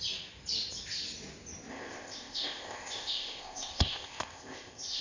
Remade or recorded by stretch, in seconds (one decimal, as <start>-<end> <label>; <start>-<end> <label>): 0.0-1.7 recorded; 1.7-5.0 remade